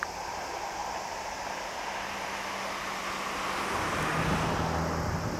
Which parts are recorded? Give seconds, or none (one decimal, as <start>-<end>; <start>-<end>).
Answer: 0.0-5.4

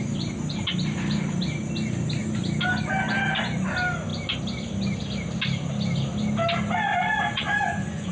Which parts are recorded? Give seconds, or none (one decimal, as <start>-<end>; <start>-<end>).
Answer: 0.0-6.9

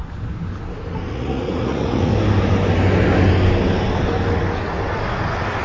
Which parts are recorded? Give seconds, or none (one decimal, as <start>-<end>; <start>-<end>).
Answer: 0.0-1.1; 2.1-5.6

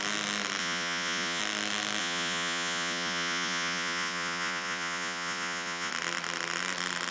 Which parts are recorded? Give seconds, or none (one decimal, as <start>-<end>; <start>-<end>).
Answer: 0.0-0.6; 1.4-2.0; 5.9-7.1